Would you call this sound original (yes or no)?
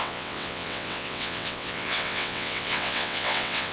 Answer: no